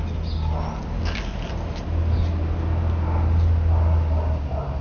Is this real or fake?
real